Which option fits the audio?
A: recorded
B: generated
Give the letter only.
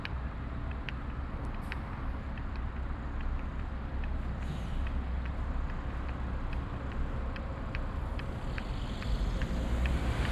A